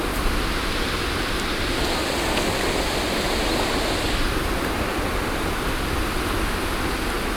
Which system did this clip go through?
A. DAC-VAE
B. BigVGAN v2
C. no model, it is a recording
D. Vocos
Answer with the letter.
C